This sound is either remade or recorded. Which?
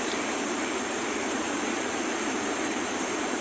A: remade